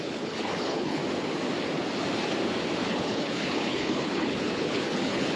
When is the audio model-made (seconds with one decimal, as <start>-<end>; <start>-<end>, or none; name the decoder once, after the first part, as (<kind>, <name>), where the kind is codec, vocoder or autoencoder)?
0.0-1.0 (codec, HILCodec); 2.9-5.4